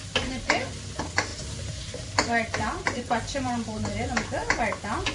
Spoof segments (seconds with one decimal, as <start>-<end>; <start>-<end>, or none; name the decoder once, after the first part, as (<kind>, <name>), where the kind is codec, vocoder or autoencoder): 1.3-3.9 (vocoder, BigVGAN v2)